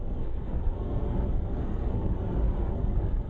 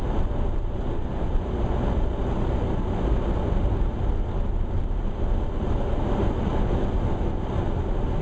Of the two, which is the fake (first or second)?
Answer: first